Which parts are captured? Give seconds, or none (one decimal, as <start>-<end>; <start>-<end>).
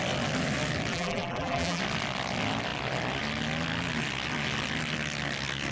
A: 0.0-0.9; 1.8-5.7